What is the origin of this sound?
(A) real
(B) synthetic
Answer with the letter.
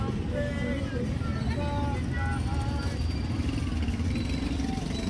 A